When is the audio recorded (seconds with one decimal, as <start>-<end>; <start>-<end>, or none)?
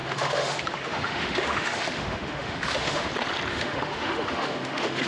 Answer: 3.1-3.5